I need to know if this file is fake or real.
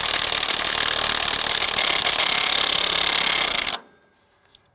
real